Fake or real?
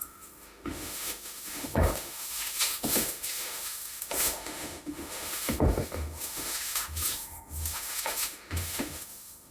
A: fake